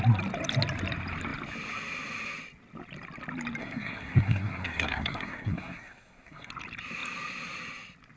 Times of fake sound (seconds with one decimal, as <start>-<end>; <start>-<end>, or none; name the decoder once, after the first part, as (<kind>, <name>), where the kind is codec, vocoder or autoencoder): 3.6-6.5 (codec, SNAC)